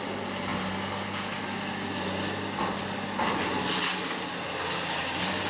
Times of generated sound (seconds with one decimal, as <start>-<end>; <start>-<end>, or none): none